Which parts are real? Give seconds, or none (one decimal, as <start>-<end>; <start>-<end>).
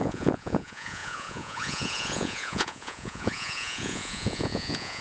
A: none